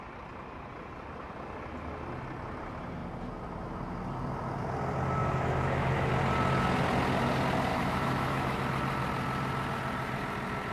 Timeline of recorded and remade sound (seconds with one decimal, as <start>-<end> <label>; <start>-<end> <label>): 0.0-5.2 recorded; 5.2-6.1 remade; 6.1-7.7 recorded; 7.7-8.6 remade; 8.6-10.7 recorded